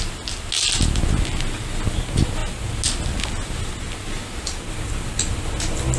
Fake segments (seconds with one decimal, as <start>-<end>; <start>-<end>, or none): none